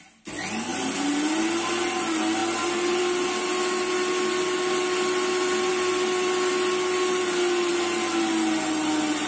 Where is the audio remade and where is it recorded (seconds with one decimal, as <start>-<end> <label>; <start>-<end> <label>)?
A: 0.0-9.3 recorded